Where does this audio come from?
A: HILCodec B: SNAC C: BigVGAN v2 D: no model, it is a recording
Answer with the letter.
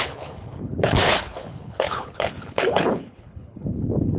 A